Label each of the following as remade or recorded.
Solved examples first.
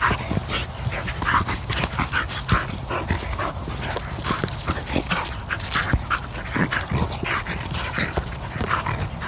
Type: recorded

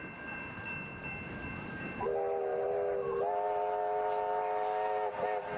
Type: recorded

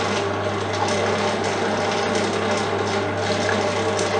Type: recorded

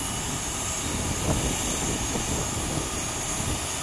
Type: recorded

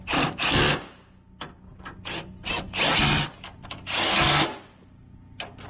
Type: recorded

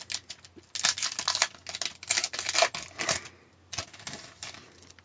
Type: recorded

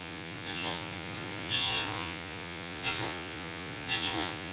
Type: remade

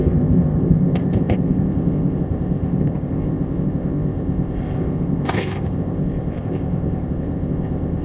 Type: remade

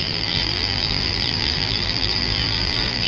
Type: remade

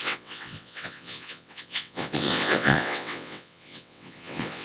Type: remade